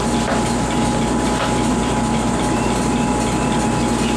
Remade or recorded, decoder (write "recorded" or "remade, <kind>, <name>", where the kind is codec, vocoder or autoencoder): recorded